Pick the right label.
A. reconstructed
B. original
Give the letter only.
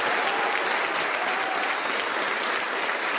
B